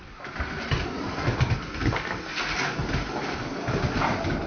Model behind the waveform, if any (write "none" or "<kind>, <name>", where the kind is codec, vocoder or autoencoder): none